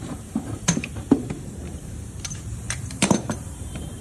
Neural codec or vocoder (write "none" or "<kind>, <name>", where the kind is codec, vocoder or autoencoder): vocoder, BigVGAN v2